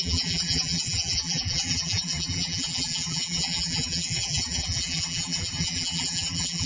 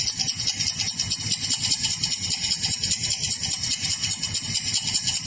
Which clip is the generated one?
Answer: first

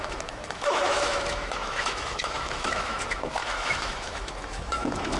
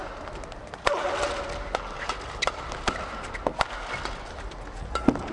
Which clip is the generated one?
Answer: first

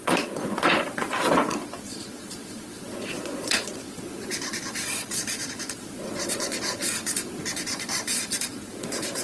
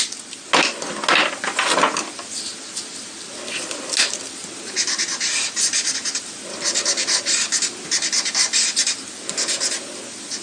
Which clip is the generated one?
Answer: first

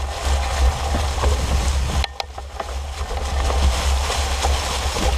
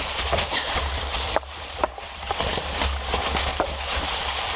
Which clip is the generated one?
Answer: second